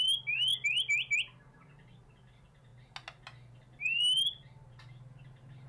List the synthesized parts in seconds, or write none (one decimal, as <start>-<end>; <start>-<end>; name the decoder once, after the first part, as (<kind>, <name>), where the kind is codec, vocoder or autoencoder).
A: none

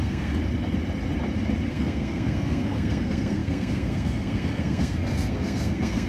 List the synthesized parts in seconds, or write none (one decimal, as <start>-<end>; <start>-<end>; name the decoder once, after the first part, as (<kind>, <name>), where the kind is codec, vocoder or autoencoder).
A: 0.0-0.4 (codec, SNAC); 1.7-6.1